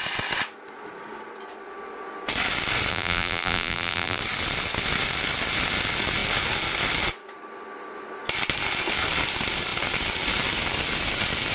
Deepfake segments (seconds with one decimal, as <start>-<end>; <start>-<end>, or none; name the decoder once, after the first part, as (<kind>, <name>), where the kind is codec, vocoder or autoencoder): 2.9-4.2 (vocoder, BigVGAN v2)